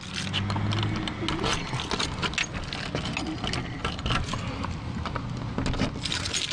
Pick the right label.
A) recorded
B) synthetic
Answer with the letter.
A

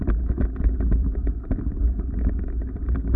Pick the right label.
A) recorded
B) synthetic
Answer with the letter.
A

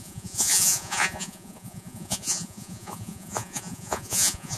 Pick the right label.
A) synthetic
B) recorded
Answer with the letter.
A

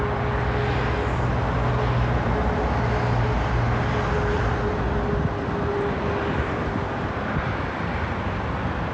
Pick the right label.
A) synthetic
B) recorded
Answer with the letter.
B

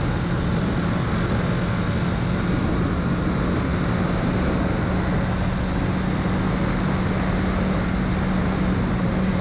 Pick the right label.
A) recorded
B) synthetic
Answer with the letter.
A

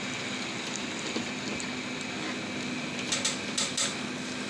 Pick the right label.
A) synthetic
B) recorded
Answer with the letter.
B